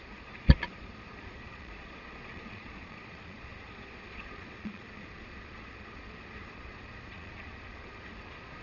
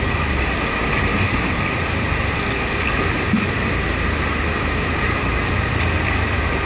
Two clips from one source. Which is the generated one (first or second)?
first